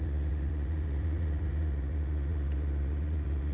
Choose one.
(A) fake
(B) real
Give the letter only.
A